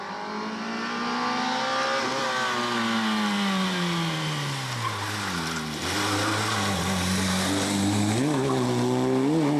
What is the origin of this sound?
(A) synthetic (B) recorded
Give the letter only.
B